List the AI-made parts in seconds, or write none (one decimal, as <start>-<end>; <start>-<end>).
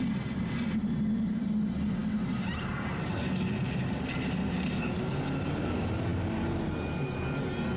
none